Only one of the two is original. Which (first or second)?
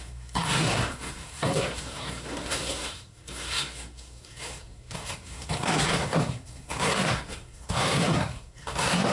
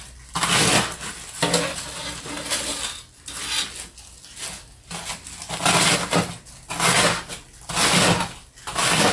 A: second